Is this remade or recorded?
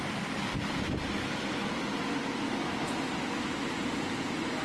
recorded